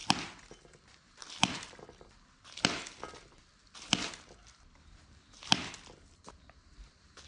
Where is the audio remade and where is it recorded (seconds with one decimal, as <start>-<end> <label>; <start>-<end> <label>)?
0.0-7.3 recorded